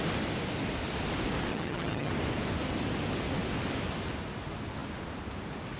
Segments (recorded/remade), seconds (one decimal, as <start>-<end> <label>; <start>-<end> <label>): 0.0-1.5 recorded; 1.5-2.1 remade; 2.1-5.8 recorded